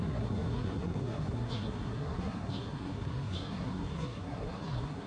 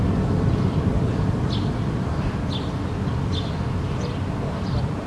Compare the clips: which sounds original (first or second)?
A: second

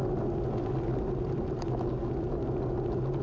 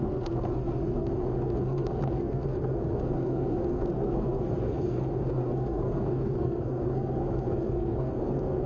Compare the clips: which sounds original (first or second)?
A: first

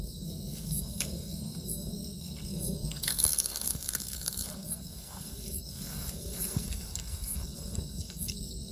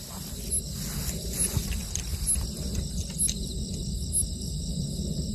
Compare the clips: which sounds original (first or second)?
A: second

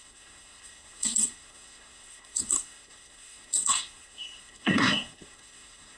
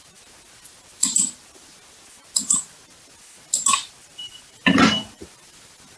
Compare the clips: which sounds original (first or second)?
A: second